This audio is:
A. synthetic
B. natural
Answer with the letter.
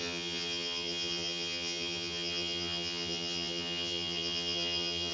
A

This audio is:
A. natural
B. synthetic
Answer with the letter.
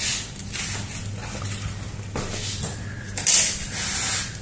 A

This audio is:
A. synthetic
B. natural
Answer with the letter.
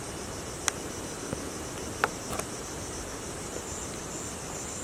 A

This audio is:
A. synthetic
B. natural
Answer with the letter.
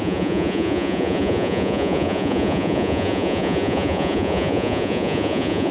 A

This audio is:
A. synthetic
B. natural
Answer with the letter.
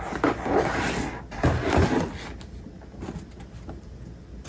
B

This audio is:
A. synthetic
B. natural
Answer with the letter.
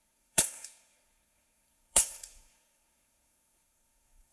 A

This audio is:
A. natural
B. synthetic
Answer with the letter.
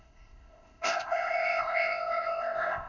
B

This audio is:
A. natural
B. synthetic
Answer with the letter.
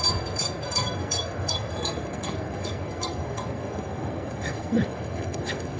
B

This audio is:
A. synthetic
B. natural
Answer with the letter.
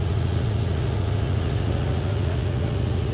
A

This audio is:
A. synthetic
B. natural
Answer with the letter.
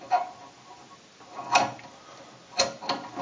B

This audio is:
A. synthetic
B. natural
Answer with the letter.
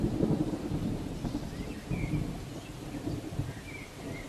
B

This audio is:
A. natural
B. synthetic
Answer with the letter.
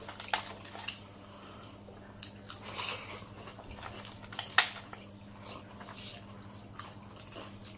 A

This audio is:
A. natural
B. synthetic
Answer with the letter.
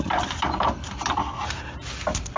A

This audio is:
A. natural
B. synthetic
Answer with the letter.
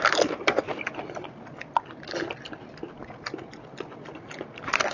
A